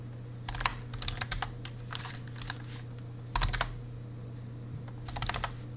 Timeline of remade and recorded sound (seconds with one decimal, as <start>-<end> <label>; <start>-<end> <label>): 0.0-5.8 recorded